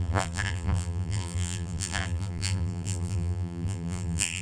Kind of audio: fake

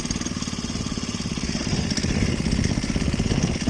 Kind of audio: real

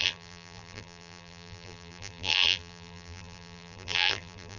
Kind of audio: fake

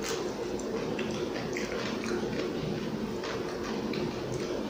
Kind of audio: real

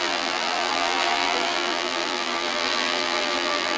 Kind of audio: fake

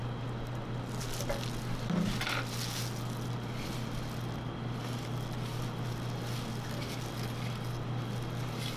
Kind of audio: real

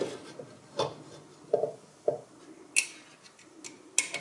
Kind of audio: real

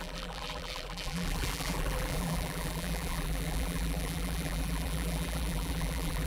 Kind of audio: fake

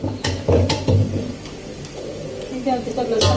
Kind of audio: fake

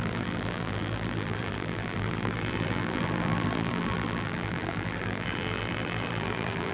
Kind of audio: fake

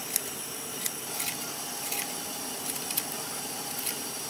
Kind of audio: real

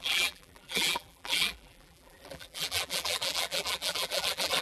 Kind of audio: fake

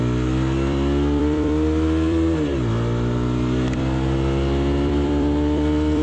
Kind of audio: fake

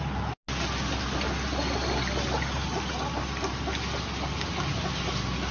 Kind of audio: real